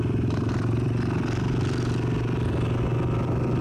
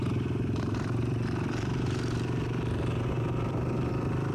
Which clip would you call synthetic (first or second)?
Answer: second